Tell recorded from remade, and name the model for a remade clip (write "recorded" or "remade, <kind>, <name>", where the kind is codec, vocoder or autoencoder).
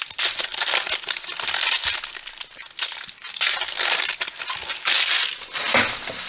recorded